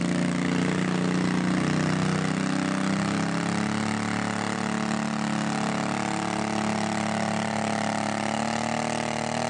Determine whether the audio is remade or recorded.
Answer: recorded